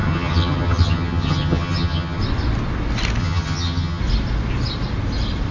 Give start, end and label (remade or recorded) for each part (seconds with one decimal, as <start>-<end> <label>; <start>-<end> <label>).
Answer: 0.0-2.2 remade; 2.2-3.2 recorded; 3.2-4.0 remade; 4.0-5.5 recorded